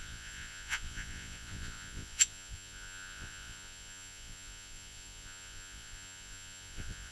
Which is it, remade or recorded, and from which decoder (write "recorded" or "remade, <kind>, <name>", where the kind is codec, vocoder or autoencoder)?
remade, vocoder, Vocos